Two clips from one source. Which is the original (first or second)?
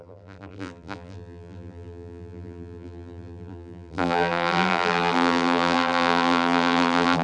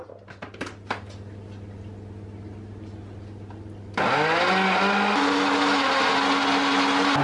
second